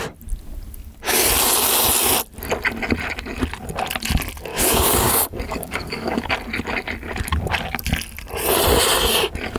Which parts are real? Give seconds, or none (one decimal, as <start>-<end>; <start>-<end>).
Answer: 0.0-4.5; 6.3-9.6